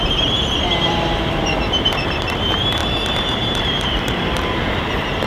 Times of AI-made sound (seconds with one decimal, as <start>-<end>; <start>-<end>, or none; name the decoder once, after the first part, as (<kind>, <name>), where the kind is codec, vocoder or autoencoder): 0.0-2.8 (vocoder, BigVGAN v2); 3.3-5.3

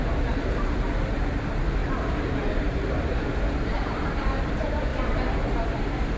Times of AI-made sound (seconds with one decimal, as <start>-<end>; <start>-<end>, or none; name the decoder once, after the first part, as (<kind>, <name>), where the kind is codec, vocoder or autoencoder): 0.0-4.9 (vocoder, BigVGAN v2)

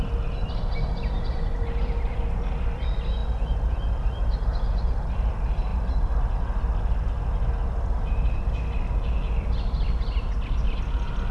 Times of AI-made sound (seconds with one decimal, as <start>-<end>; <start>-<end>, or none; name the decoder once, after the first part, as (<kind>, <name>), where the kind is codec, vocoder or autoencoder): none

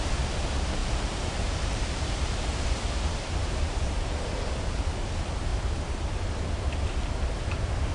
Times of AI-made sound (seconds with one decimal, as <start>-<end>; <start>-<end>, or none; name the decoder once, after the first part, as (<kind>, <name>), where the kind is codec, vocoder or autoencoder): 0.8-4.0 (vocoder, BigVGAN v2)

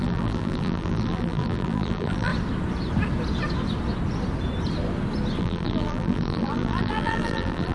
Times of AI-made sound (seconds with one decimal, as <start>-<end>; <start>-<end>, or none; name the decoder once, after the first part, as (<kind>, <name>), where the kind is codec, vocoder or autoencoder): 0.0-2.3 (vocoder, BigVGAN v2); 5.4-7.7

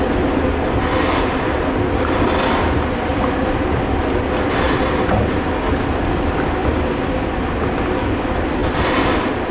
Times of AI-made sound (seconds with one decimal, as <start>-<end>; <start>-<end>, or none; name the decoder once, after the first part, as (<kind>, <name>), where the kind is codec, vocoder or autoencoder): 3.1-4.9 (vocoder, BigVGAN v2); 6.6-7.4; 8.6-9.5

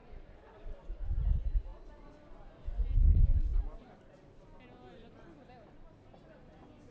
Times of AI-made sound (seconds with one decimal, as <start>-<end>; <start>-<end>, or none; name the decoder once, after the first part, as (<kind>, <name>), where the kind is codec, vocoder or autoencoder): 0.0-1.0 (vocoder, BigVGAN v2); 3.5-4.4

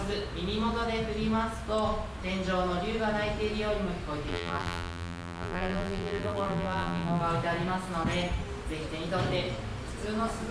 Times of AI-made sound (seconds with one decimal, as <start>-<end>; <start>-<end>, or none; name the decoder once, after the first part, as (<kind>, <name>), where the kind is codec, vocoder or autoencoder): 4.3-7.2 (vocoder, BigVGAN v2)